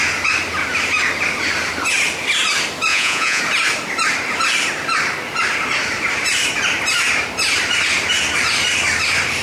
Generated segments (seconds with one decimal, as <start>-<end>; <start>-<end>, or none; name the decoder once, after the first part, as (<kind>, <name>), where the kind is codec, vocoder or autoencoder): 2.9-3.4 (vocoder, Vocos)